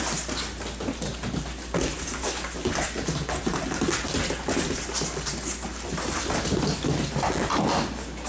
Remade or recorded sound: recorded